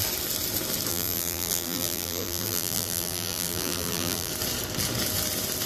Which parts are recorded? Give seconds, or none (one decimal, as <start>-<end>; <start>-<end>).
0.0-0.9; 4.3-5.7